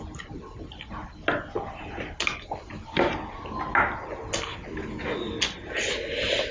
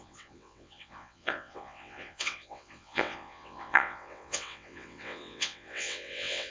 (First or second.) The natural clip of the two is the first